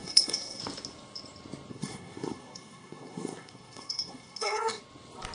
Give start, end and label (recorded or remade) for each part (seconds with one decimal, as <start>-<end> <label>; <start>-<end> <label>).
0.0-0.6 remade; 0.6-1.7 recorded; 1.7-4.8 remade; 4.8-5.3 recorded

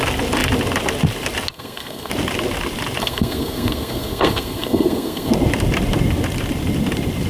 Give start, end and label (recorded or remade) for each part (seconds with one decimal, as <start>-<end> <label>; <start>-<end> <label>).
0.0-1.5 recorded; 1.5-2.1 remade; 2.1-3.0 recorded; 3.0-5.3 remade; 5.3-7.3 recorded

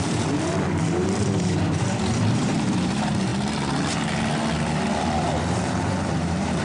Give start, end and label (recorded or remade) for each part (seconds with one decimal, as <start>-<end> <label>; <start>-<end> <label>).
0.0-3.3 remade; 3.3-5.4 recorded; 5.4-6.6 remade

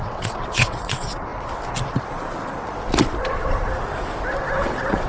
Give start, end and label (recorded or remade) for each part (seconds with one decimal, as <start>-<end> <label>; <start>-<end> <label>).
0.0-1.3 remade; 1.3-4.4 recorded; 4.4-5.1 remade

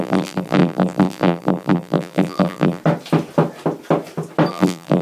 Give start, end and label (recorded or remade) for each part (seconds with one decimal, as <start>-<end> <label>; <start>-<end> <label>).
0.0-2.8 remade; 2.8-4.5 recorded; 4.5-5.0 remade